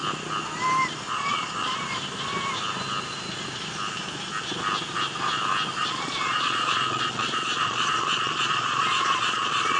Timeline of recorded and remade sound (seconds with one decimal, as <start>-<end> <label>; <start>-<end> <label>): 0.0-1.1 recorded; 1.1-1.8 remade; 1.8-5.8 recorded; 5.8-9.8 remade